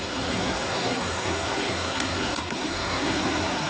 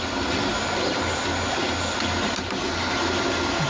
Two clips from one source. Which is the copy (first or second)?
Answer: first